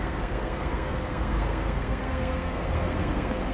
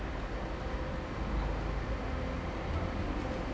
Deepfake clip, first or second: first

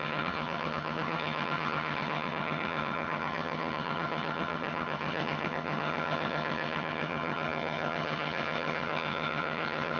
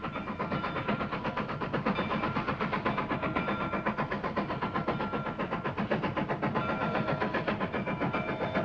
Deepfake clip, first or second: first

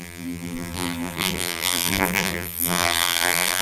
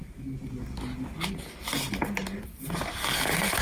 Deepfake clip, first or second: first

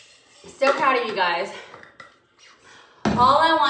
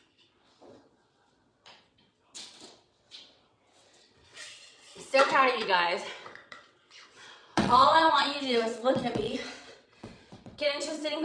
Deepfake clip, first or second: second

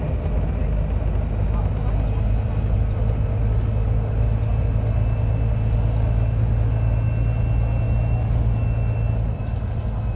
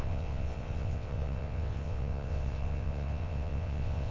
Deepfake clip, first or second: second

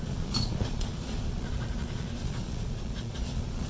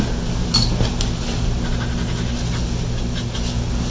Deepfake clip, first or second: first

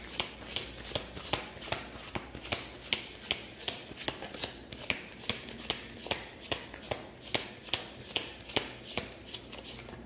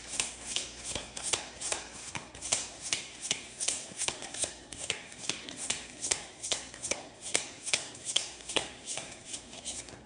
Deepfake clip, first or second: second